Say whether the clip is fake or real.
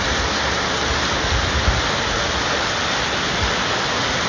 real